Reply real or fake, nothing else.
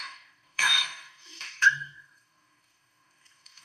fake